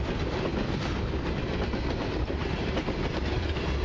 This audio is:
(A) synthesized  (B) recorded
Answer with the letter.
B